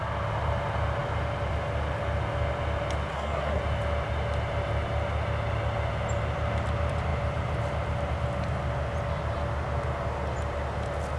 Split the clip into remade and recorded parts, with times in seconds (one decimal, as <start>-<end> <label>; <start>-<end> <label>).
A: 0.0-3.1 recorded; 3.1-3.6 remade; 3.6-11.2 recorded